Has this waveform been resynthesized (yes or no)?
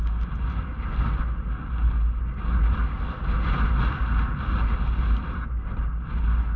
no